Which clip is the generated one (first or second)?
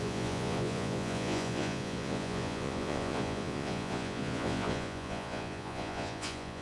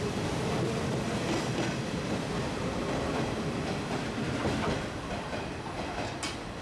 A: first